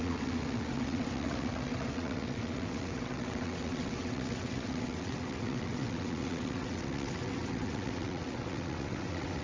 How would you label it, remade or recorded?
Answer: remade